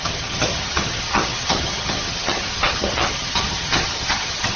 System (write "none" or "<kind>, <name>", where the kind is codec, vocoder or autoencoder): vocoder, HiFi-GAN